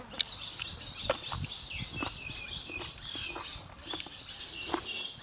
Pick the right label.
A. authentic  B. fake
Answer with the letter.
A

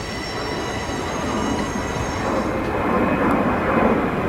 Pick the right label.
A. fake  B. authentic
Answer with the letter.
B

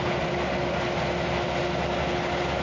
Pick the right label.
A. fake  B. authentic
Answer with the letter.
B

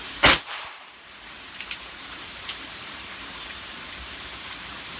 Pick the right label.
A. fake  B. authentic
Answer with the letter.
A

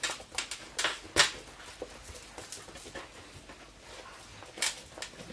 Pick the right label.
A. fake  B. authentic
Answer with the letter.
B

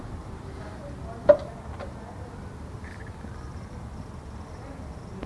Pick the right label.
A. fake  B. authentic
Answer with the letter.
B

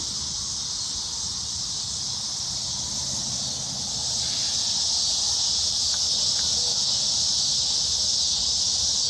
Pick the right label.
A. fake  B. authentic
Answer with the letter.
A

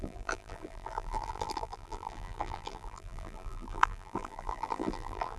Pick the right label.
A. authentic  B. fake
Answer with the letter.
B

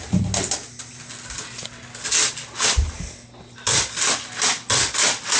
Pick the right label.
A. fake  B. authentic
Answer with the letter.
B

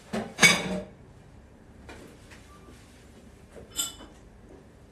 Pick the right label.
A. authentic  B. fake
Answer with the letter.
B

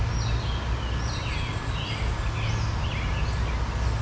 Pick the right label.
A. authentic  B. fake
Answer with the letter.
A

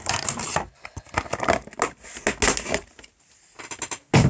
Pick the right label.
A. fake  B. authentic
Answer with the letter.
B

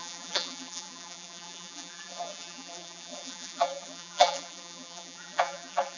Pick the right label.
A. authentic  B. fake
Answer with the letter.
B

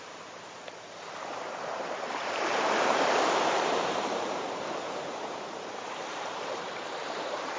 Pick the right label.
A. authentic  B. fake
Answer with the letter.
B